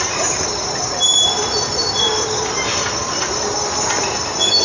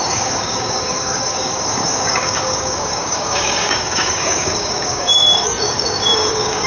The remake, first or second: second